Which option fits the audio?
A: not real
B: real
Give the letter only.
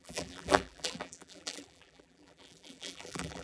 A